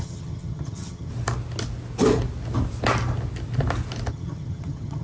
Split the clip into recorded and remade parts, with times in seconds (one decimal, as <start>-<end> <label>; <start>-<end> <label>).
0.0-1.1 remade; 1.1-4.1 recorded; 4.1-5.0 remade

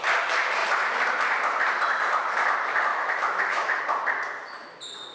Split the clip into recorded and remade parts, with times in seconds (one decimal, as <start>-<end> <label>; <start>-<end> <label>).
0.0-2.9 recorded; 2.9-3.8 remade; 3.8-5.1 recorded

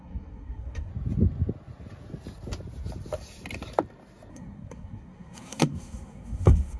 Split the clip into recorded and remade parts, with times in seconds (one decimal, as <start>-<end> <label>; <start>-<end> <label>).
0.0-0.9 remade; 0.9-4.3 recorded; 4.3-6.8 remade

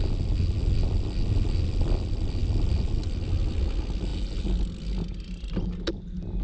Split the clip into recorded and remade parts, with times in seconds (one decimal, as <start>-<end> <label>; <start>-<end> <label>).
0.0-6.4 recorded

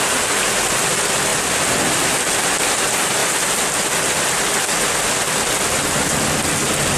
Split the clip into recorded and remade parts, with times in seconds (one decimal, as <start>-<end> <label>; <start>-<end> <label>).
0.0-7.0 recorded